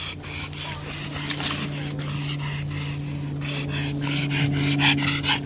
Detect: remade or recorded recorded